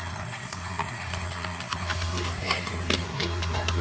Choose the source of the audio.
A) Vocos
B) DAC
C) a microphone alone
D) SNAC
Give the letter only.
D